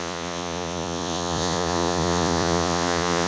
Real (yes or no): no